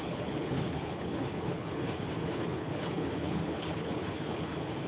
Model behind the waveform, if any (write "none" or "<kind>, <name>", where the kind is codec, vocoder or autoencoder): codec, HILCodec